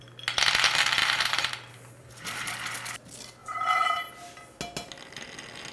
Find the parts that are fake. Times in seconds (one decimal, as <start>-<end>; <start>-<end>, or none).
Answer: 1.0-1.5; 2.0-2.5; 3.4-4.1